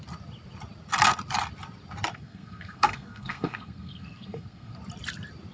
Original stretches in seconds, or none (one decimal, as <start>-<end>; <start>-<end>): 0.0-2.1; 4.8-5.5